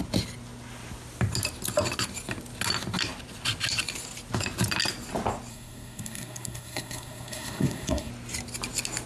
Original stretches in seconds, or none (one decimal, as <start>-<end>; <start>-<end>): 0.0-5.5; 8.1-9.1